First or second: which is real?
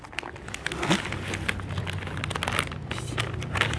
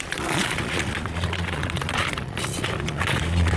first